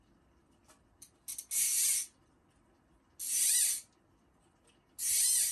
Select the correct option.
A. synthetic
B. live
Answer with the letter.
B